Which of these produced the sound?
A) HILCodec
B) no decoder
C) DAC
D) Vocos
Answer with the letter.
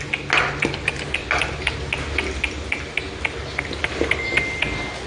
B